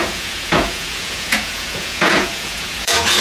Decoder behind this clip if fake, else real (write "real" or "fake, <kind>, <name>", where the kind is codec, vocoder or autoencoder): fake, vocoder, Vocos